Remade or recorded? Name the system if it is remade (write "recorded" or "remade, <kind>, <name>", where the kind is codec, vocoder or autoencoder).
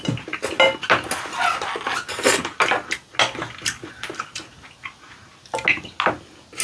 recorded